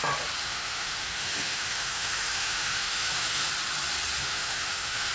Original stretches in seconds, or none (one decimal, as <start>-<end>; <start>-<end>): 0.0-0.4; 3.5-4.2